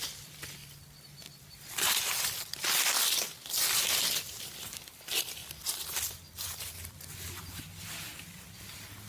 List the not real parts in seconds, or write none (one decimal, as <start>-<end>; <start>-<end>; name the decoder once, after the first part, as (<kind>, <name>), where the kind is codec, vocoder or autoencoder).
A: 0.0-8.1 (vocoder, BigVGAN v2); 8.7-9.1